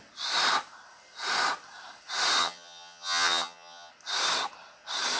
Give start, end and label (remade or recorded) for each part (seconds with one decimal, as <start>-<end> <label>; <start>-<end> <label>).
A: 0.0-2.4 recorded; 2.4-3.9 remade; 3.9-5.2 recorded